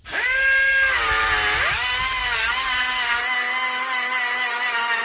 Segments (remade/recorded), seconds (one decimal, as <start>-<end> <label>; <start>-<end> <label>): 0.0-5.0 recorded